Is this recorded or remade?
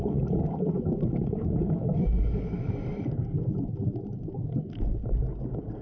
remade